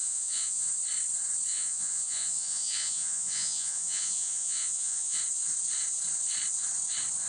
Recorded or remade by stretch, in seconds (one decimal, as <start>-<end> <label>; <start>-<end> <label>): 0.0-0.7 remade; 0.7-1.5 recorded; 1.5-5.2 remade; 5.2-7.3 recorded